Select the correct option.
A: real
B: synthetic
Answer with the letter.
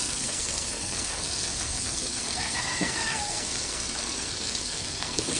B